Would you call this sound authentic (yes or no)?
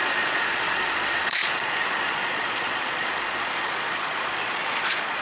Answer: no